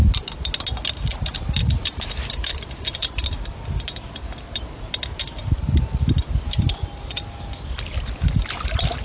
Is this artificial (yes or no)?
no